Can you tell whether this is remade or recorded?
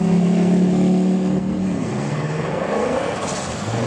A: remade